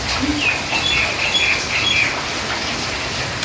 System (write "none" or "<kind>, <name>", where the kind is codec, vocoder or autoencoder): none